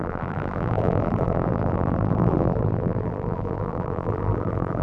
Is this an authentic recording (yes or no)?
no